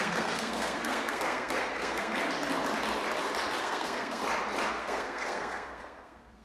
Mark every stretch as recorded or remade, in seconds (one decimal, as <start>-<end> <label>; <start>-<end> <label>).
0.0-2.1 remade; 2.1-3.6 recorded; 3.6-4.2 remade; 4.2-4.7 recorded; 4.7-6.4 remade